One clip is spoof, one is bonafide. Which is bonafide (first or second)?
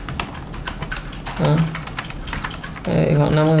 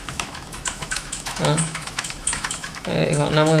first